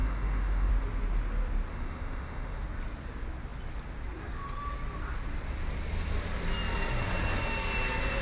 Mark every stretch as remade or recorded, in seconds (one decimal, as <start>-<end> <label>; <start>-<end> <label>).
0.0-0.7 remade; 0.7-1.7 recorded; 1.7-2.6 remade; 2.6-8.2 recorded